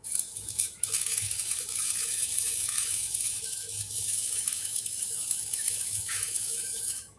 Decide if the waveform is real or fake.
fake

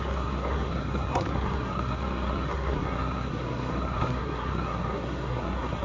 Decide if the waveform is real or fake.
fake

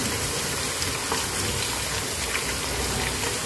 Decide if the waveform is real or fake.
real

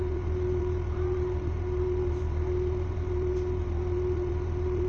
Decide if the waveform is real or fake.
fake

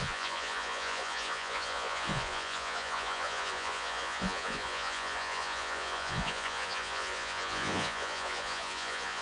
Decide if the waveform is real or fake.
fake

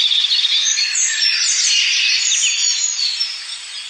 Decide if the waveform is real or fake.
real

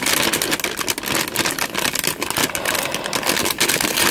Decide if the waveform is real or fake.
real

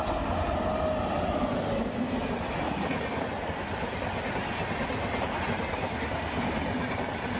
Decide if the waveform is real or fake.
real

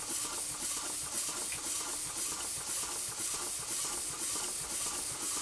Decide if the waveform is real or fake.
real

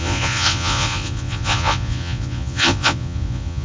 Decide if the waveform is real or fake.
fake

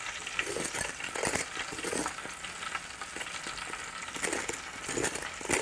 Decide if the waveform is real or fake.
real